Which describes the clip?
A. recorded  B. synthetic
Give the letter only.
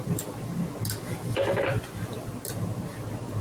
A